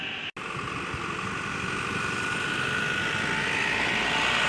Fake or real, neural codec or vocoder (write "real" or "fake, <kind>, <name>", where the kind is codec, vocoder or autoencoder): real